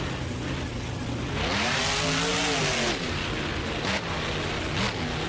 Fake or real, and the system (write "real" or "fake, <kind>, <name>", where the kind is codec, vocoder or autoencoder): real